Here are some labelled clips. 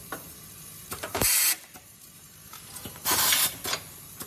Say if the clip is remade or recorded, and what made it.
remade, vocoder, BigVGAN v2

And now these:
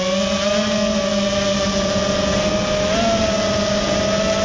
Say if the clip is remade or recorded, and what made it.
recorded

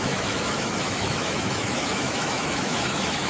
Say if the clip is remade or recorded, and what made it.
remade, autoencoder, DAC-VAE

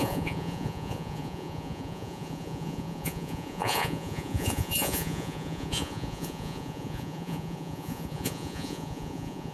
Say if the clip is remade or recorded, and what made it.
remade, vocoder, Vocos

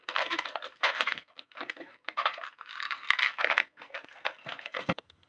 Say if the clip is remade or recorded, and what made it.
remade, codec, SNAC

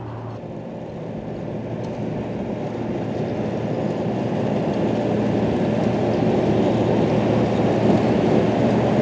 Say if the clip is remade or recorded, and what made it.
recorded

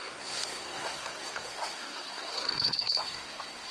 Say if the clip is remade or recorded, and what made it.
remade, codec, SNAC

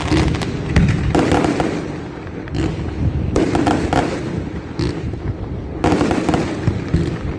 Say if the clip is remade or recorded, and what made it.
recorded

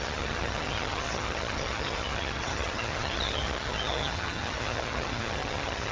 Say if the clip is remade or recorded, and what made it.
remade, vocoder, HiFi-GAN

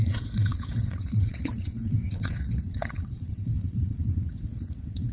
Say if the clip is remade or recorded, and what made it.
remade, vocoder, WaveNeXt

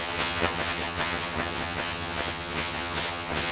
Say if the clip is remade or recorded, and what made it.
remade, vocoder, HiFi-GAN